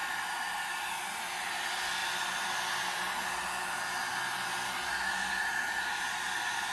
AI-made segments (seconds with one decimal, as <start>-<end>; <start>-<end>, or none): 2.0-3.3